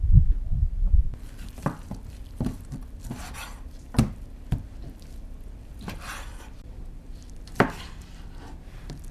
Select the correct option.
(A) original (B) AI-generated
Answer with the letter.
B